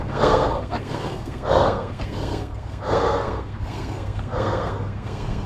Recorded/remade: remade